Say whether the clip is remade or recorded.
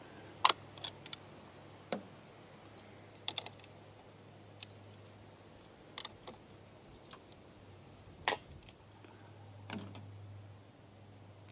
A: recorded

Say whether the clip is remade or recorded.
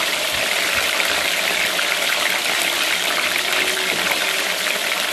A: remade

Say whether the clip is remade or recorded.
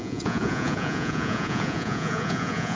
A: remade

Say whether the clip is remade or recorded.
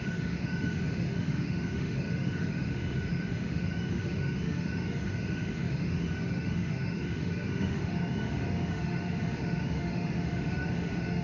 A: remade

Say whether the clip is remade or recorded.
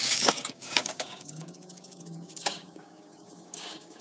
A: remade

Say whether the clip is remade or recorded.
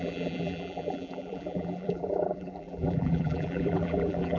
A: remade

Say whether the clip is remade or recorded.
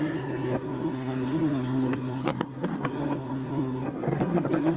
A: remade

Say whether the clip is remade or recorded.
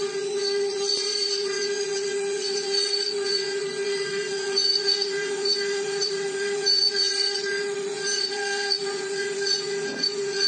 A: remade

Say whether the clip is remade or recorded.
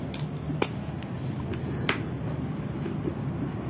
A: recorded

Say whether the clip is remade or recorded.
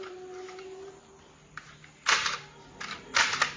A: recorded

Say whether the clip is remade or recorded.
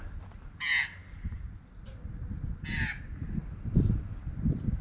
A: recorded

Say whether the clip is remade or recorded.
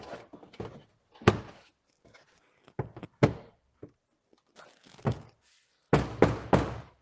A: recorded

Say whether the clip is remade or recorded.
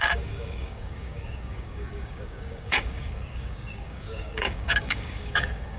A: remade